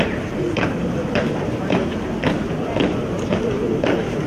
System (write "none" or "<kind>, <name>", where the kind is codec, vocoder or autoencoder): vocoder, BigVGAN v2